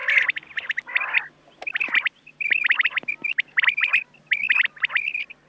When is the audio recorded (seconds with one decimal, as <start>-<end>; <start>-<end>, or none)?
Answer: 0.0-5.5